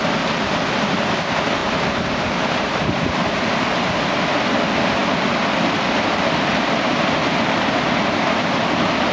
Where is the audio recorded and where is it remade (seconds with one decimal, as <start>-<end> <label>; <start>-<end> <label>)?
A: 0.0-1.6 recorded; 1.6-3.4 remade; 3.4-9.1 recorded